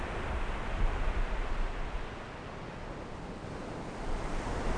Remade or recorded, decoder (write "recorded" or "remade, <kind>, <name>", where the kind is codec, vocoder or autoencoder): recorded